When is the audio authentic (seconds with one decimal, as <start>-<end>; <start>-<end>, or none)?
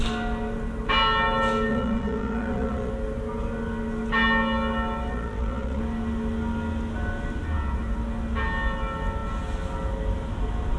0.0-1.7; 2.9-5.1; 5.8-10.8